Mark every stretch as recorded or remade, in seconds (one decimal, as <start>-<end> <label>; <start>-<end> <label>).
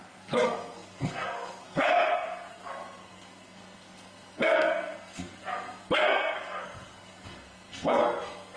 0.0-8.6 remade